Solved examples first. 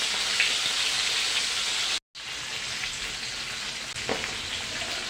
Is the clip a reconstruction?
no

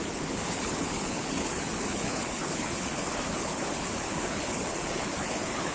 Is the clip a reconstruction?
yes